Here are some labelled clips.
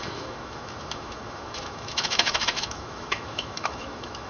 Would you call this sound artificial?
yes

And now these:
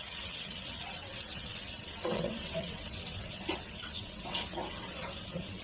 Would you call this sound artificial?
yes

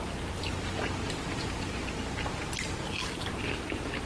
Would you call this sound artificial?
no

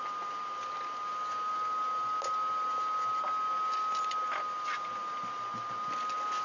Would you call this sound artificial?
no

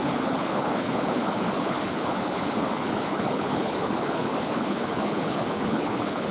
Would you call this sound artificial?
yes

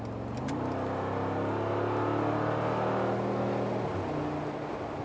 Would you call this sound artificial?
no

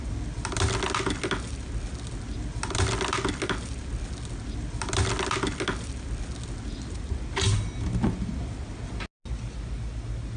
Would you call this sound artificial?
no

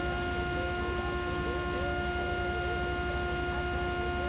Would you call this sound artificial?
no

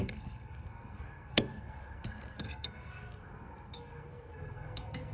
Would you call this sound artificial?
yes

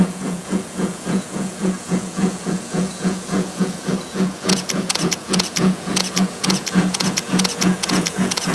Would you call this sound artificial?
yes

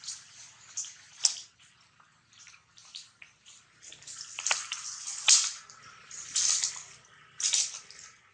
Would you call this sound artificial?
no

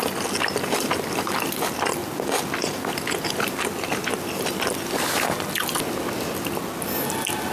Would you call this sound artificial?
no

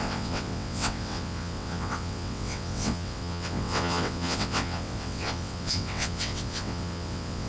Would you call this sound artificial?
yes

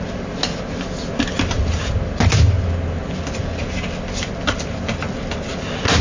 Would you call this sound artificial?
no